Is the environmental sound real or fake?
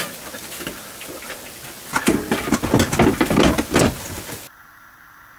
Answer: real